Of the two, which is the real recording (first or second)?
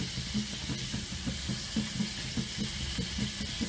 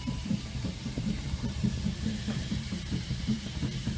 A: first